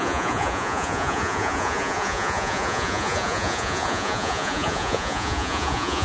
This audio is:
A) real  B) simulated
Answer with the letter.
B